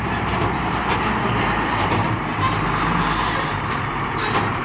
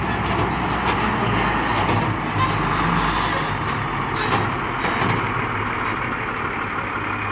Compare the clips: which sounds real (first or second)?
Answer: second